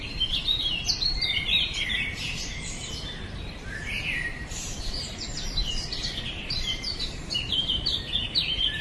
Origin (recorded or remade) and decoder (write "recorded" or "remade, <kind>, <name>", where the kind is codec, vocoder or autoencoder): remade, vocoder, BigVGAN v2